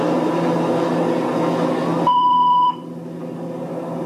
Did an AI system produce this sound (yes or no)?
no